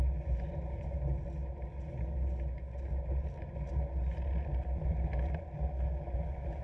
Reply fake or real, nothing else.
real